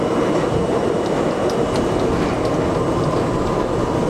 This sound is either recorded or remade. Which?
recorded